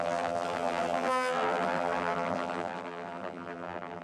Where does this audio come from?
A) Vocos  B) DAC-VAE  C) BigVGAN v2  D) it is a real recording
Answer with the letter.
C